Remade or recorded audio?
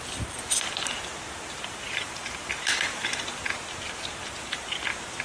recorded